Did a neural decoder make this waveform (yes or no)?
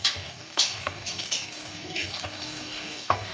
yes